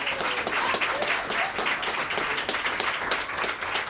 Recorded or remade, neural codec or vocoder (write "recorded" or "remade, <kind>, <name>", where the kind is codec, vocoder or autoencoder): recorded